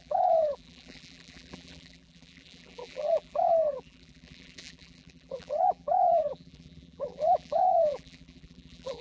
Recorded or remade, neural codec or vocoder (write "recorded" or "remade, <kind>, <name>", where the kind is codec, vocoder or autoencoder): remade, vocoder, BigVGAN v2